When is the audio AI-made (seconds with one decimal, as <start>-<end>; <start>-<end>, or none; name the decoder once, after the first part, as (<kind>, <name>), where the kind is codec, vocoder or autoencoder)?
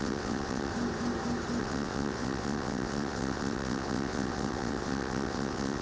0.0-0.7 (vocoder, WaveNeXt); 1.6-5.8